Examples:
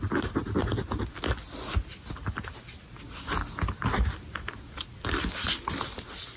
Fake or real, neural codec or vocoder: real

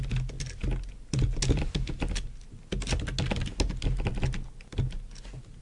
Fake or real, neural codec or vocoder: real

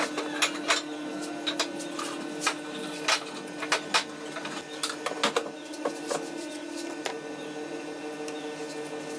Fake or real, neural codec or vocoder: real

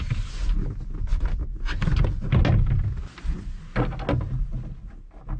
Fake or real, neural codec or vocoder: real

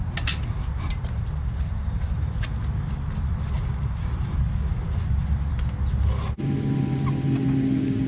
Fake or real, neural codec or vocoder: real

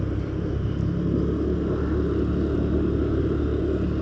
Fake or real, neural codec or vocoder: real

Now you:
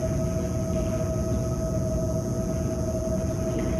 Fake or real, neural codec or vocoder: real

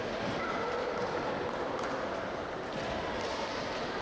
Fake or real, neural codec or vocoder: real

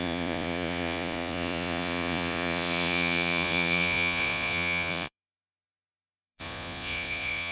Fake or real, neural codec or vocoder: fake, vocoder, Vocos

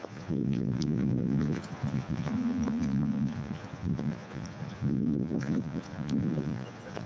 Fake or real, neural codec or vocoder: fake, vocoder, Vocos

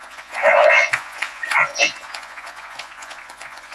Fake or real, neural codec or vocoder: fake, vocoder, Vocos